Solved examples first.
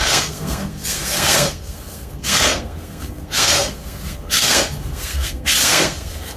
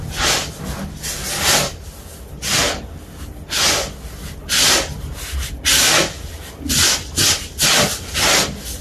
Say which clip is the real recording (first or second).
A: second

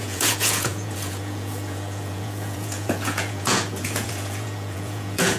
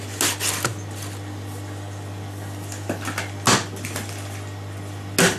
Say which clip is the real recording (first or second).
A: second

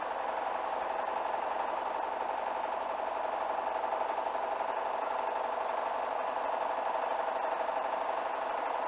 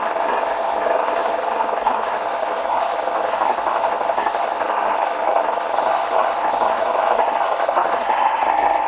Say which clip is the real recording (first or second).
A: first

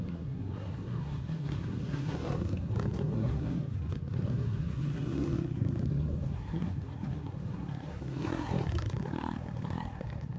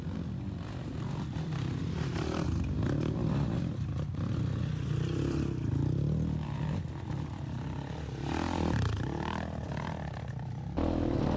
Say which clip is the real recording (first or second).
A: second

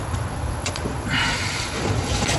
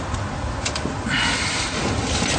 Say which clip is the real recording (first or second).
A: second